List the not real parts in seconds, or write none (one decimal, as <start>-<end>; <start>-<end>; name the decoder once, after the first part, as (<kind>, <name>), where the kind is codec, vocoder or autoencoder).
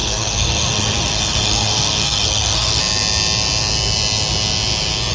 0.0-2.8 (codec, SNAC)